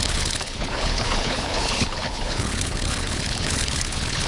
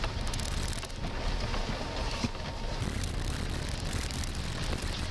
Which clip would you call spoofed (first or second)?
first